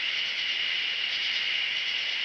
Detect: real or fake real